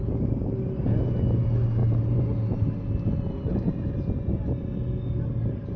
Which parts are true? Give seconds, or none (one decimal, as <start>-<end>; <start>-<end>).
0.0-1.8; 2.6-5.8